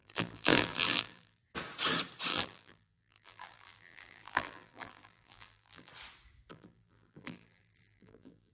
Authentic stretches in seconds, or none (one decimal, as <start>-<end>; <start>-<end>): 1.4-2.3; 5.9-6.5